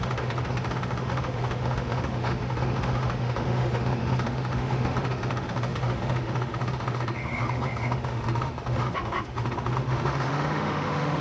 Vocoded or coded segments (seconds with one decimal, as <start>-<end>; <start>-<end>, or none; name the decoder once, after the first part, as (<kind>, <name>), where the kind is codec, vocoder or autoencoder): 0.0-11.2 (autoencoder, DAC-VAE)